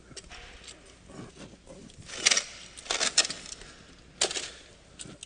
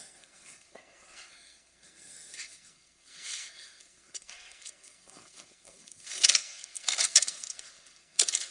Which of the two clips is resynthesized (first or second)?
second